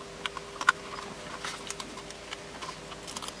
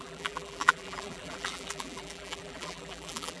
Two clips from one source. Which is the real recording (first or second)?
first